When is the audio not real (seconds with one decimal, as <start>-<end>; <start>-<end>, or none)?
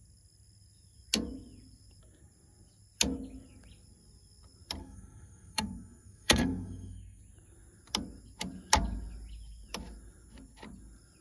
4.8-7.2